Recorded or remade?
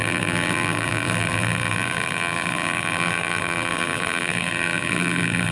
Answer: remade